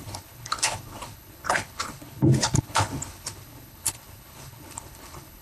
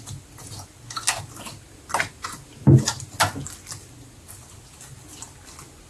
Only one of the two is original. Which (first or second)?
second